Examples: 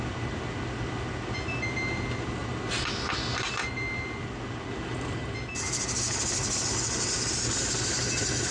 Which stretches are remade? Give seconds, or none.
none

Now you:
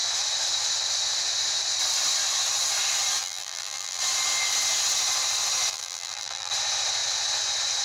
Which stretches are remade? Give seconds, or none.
3.2-4.0; 5.7-6.5

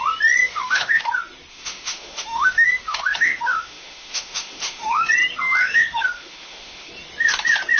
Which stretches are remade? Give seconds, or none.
0.4-1.0; 1.5-5.1; 5.6-6.9

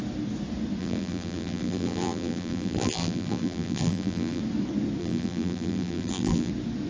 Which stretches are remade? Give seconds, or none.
0.8-4.4; 5.0-6.5

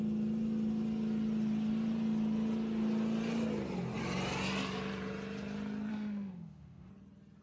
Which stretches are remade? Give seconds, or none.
5.9-6.9

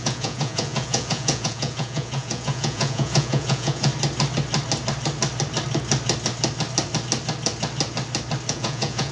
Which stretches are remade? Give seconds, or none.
0.0-3.9; 8.5-9.1